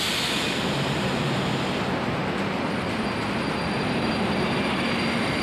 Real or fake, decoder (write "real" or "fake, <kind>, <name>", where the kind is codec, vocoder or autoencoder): real